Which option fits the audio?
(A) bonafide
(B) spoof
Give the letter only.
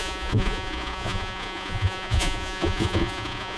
B